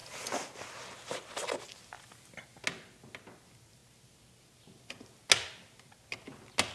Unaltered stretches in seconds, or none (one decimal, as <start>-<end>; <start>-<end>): 0.0-6.7